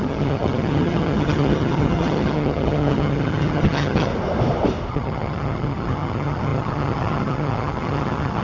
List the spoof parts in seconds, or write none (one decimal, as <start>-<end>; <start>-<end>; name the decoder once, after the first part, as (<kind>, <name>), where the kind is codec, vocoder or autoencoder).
0.0-4.1 (vocoder, HiFi-GAN); 4.9-8.4

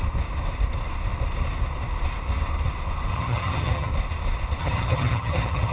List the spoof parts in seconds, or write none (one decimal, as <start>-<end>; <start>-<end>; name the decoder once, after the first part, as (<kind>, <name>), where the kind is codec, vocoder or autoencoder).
3.1-3.9 (vocoder, HiFi-GAN); 4.6-5.7